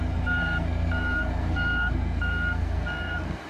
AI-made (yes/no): yes